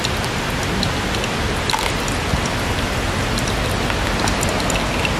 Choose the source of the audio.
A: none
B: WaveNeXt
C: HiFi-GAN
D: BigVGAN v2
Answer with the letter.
A